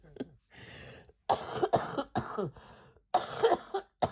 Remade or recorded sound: recorded